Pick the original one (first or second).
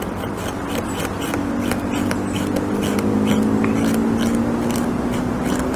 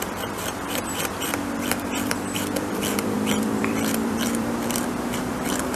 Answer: first